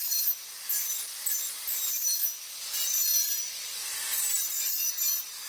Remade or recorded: recorded